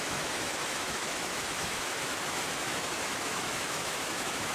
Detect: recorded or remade remade